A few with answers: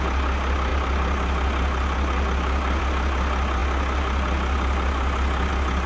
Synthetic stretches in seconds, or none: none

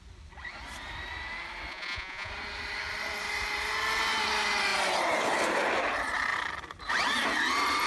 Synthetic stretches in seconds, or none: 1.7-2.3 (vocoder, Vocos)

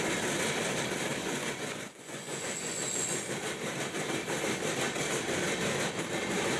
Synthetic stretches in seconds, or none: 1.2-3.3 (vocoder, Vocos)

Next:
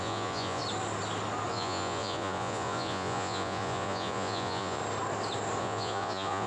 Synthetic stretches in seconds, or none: 0.0-0.6 (vocoder, Vocos); 1.5-4.8; 5.6-6.5